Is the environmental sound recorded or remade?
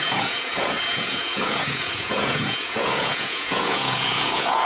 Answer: remade